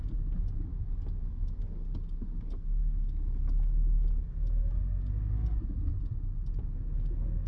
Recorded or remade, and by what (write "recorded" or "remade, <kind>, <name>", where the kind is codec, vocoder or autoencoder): recorded